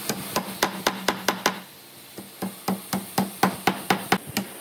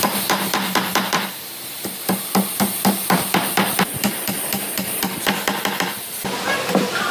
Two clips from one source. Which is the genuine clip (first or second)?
first